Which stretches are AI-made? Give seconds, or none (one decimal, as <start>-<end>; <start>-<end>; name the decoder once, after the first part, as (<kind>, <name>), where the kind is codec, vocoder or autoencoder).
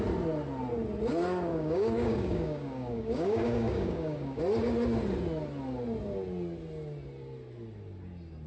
1.5-4.4 (codec, DAC)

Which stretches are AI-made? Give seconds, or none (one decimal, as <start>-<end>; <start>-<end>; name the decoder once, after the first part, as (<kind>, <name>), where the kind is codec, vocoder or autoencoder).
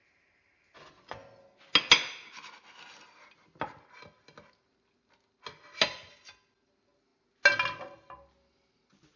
none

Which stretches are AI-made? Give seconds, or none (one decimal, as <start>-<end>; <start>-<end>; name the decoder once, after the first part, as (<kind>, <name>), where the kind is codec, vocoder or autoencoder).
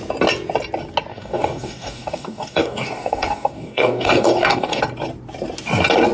1.1-4.8 (codec, DAC)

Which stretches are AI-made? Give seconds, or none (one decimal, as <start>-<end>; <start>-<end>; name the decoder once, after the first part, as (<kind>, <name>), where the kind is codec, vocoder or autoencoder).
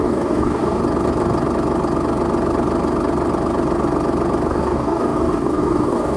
0.0-0.8 (codec, DAC); 4.5-6.2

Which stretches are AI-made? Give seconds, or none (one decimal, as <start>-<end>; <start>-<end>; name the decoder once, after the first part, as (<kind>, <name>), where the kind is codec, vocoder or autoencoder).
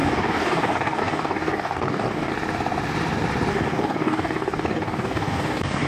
0.0-2.3 (codec, DAC); 3.5-5.9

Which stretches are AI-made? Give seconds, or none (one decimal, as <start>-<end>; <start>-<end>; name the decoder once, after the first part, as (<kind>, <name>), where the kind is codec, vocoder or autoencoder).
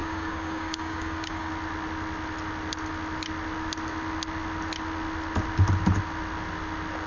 0.0-1.5 (codec, DAC)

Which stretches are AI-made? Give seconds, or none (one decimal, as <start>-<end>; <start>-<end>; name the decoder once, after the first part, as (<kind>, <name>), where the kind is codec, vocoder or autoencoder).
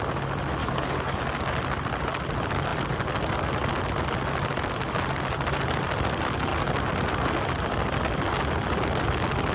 0.6-1.2 (codec, DAC)